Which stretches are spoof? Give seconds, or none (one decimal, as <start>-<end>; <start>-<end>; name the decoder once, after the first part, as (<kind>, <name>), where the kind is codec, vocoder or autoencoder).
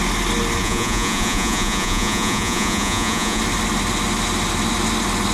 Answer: 0.6-3.4 (vocoder, Vocos)